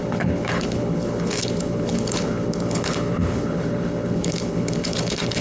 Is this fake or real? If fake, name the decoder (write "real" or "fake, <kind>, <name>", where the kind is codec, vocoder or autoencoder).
fake, codec, HILCodec